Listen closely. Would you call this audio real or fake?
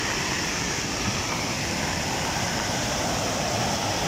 real